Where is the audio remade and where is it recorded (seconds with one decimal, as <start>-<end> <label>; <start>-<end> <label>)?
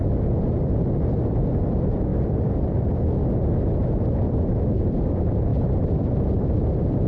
0.0-7.1 recorded